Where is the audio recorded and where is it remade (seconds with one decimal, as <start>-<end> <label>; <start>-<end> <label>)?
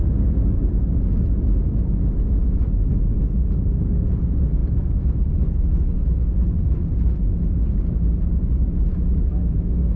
0.0-10.0 recorded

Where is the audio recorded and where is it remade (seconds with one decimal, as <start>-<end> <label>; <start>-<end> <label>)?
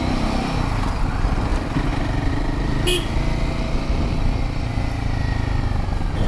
0.0-6.3 recorded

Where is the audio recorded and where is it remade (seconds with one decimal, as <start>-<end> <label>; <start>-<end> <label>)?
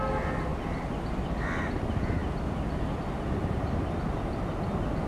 0.0-5.1 recorded